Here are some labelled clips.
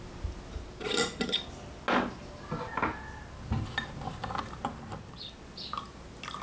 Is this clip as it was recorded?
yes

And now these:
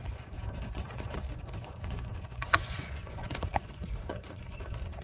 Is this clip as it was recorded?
no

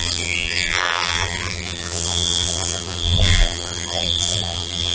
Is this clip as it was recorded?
no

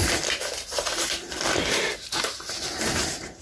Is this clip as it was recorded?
no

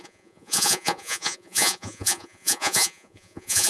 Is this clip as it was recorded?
no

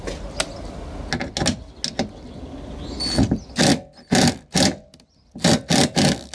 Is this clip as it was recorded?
yes